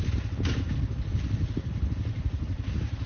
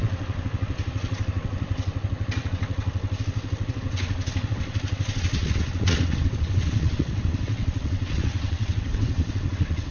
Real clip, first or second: first